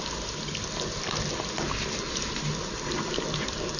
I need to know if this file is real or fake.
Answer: real